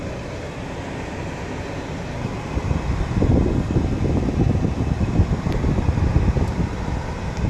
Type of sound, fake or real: real